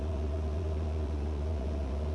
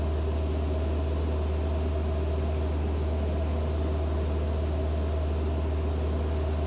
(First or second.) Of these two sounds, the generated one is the first